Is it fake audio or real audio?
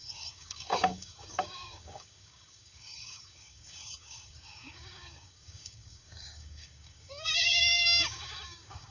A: fake